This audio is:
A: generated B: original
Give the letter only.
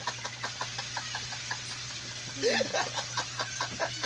B